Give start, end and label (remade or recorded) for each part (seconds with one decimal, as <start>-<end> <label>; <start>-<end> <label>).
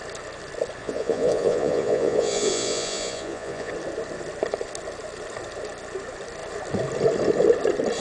0.0-0.8 recorded; 0.8-3.7 remade; 3.7-8.0 recorded